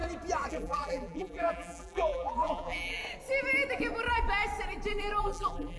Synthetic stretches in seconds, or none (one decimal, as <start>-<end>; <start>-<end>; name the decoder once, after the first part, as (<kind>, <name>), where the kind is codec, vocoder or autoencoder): 0.5-3.0 (vocoder, BigVGAN v2); 5.2-5.8